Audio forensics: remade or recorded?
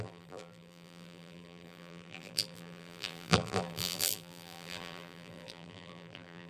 remade